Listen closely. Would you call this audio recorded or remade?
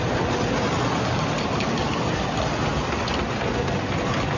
recorded